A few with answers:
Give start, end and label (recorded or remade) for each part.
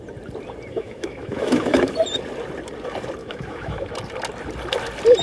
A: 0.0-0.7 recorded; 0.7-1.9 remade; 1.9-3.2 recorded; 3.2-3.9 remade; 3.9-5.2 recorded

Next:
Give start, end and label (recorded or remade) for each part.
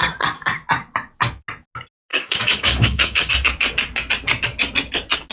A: 0.0-2.1 recorded; 2.1-3.3 remade; 3.3-5.3 recorded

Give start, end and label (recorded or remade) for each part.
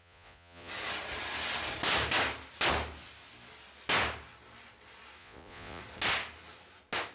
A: 0.0-0.7 remade; 0.7-5.2 recorded; 5.2-5.8 remade; 5.8-7.1 recorded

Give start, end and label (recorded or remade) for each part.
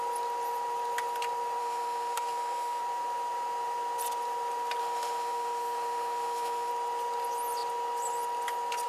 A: 0.0-1.6 recorded; 1.6-2.8 remade; 2.8-4.8 recorded; 4.8-6.7 remade; 6.7-8.9 recorded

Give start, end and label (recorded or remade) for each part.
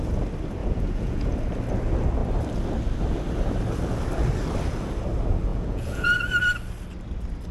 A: 0.0-0.6 recorded; 0.6-1.3 remade; 1.3-5.5 recorded; 5.5-6.3 remade; 6.3-7.5 recorded